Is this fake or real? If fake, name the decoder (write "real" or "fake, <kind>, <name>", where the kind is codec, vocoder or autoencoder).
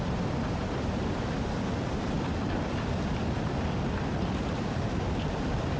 real